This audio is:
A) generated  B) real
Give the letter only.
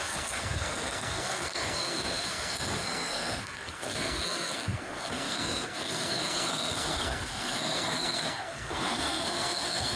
A